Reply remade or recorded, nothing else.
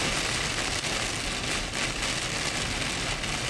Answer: recorded